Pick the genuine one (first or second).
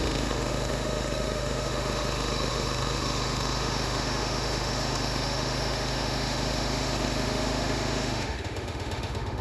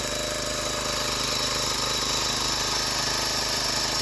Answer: second